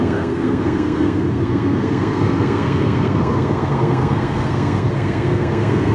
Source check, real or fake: fake